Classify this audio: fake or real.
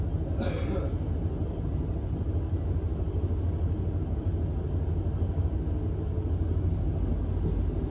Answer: real